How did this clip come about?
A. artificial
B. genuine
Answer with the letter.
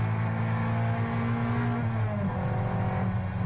B